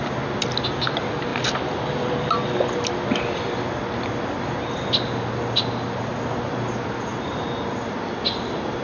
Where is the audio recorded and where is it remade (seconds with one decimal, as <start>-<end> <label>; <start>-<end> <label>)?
0.0-8.8 recorded

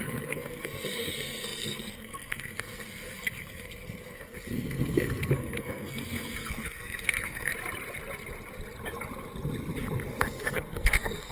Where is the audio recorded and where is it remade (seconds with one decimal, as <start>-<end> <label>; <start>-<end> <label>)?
0.0-7.5 remade; 7.5-10.2 recorded; 10.2-11.3 remade

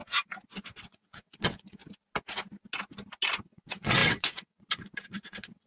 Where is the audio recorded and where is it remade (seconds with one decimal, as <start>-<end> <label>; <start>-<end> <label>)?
0.0-0.6 recorded; 0.6-1.8 remade; 1.8-3.4 recorded; 3.4-5.7 remade

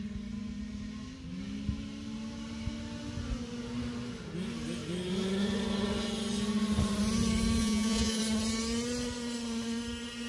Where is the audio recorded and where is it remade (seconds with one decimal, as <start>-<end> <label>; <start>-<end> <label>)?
0.0-7.6 recorded; 7.6-8.2 remade; 8.2-10.3 recorded

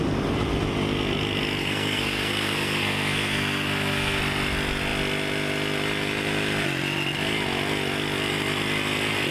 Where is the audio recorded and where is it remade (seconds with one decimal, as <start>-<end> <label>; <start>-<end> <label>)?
0.0-1.6 recorded; 1.6-4.2 remade; 4.2-9.3 recorded

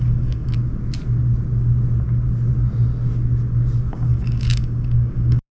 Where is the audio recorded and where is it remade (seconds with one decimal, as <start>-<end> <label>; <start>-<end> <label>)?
0.0-0.6 remade; 0.6-3.9 recorded; 3.9-5.5 remade

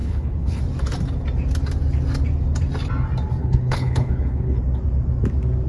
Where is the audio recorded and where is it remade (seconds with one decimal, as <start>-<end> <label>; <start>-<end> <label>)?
0.0-0.6 remade; 0.6-3.4 recorded; 3.4-4.6 remade; 4.6-5.7 recorded

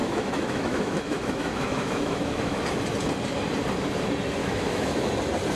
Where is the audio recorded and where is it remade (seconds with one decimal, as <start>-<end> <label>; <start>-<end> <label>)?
0.0-2.6 remade; 2.6-4.4 recorded; 4.4-5.1 remade; 5.1-5.6 recorded